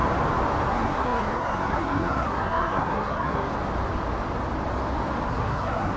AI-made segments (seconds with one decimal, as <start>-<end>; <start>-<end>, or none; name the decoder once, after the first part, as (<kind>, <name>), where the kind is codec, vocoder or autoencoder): 0.7-3.5 (codec, SNAC); 5.3-6.0